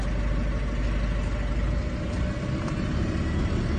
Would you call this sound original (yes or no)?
yes